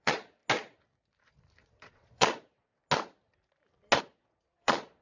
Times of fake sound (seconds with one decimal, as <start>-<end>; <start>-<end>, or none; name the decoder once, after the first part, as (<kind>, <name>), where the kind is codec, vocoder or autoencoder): 0.0-0.4 (vocoder, Vocos); 1.6-2.7; 4.0-5.0